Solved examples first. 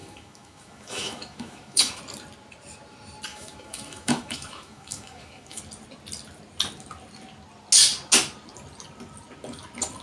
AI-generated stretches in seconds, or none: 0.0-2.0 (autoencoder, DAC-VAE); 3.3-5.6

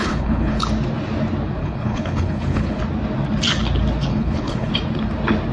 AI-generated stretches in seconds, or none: 0.0-0.6 (codec, HILCodec); 1.6-2.8; 4.1-4.7

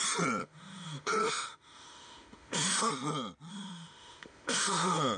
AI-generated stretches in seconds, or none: 0.4-2.9 (autoencoder, DAC-VAE); 3.5-5.2

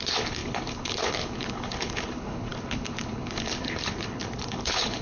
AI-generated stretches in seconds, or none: 0.0-5.0 (codec, HILCodec)

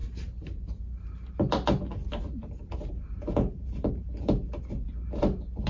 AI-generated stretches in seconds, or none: 0.0-1.3 (vocoder, BigVGAN v2); 2.6-4.6